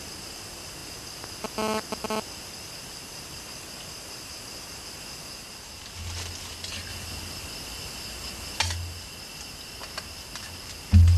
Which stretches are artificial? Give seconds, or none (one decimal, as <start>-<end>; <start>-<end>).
6.9-8.6